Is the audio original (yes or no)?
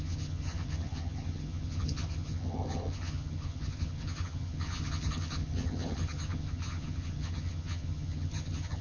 no